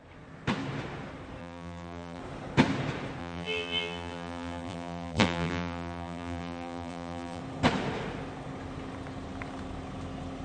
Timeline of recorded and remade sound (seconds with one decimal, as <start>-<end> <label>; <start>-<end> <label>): 0.0-1.4 recorded; 1.4-2.2 remade; 2.2-3.2 recorded; 3.2-7.4 remade; 7.4-10.4 recorded